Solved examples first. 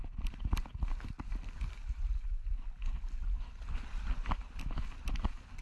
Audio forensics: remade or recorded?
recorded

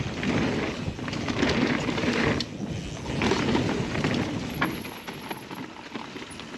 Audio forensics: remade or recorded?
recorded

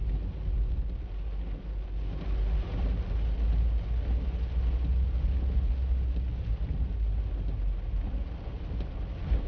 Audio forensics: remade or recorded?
recorded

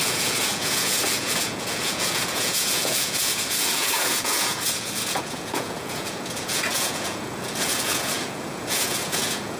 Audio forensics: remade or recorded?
remade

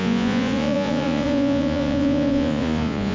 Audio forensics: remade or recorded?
remade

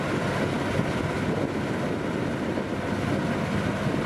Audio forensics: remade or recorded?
recorded